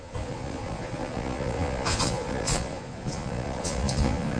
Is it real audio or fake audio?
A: fake